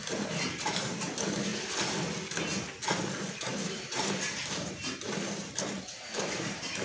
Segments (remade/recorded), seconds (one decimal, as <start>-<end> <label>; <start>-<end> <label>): 0.0-1.5 remade; 1.5-3.3 recorded; 3.3-6.8 remade